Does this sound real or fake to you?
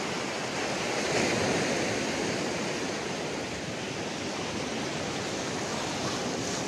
real